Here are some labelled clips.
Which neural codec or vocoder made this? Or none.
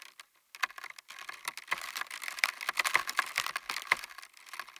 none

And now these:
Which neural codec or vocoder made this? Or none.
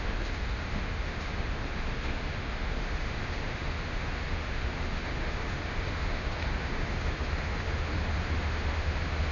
autoencoder, DAC-VAE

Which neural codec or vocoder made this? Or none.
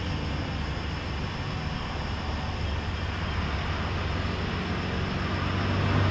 none